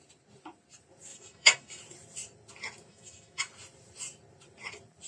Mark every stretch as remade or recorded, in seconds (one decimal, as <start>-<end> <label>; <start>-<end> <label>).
0.0-1.1 recorded; 1.1-1.8 remade; 1.8-2.9 recorded; 2.9-3.5 remade; 3.5-5.1 recorded